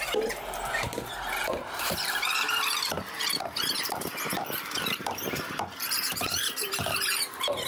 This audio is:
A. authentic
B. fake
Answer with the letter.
B